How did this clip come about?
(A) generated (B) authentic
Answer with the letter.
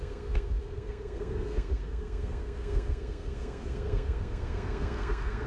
A